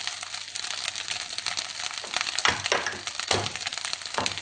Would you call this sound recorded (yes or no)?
yes